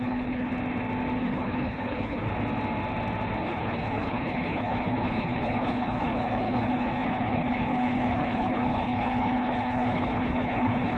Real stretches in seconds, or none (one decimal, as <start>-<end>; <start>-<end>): 0.5-1.2; 2.3-3.4